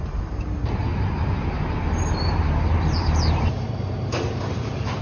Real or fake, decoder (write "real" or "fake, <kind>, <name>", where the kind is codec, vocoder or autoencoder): fake, vocoder, BigVGAN v2